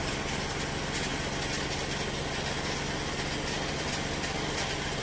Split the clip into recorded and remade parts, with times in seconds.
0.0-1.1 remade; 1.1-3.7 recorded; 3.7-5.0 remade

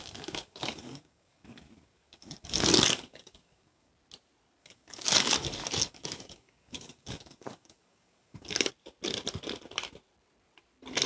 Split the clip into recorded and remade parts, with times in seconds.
0.0-3.9 remade; 3.9-4.6 recorded; 4.6-8.7 remade; 8.7-11.1 recorded

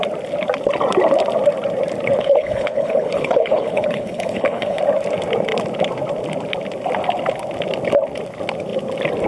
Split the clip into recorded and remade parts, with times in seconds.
0.0-2.2 recorded; 2.2-4.8 remade; 4.8-9.3 recorded

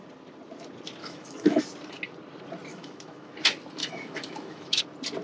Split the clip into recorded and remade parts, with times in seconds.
0.0-1.0 recorded; 1.0-1.6 remade; 1.6-2.7 recorded; 2.7-3.3 remade; 3.3-3.8 recorded; 3.8-4.8 remade; 4.8-5.2 recorded

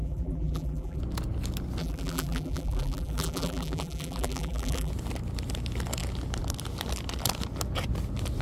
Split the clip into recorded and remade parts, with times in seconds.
0.0-1.0 remade; 1.0-1.8 recorded; 1.8-4.9 remade; 4.9-8.4 recorded